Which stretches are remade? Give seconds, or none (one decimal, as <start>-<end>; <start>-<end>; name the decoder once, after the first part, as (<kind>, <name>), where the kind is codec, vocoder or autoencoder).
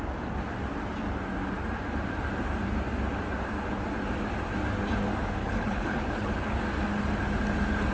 5.4-6.6 (codec, HILCodec)